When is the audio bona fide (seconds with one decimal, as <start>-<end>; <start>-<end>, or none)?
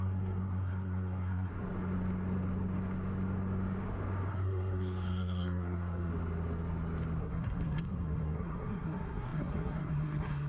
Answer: 1.5-4.3; 6.1-7.2